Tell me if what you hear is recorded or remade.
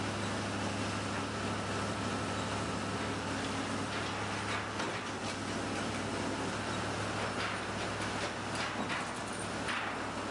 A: recorded